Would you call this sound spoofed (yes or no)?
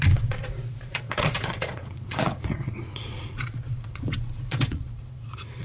yes